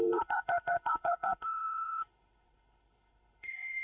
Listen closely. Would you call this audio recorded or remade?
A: remade